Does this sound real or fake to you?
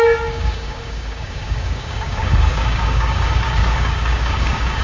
fake